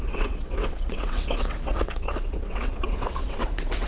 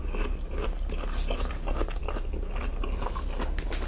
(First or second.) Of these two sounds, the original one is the second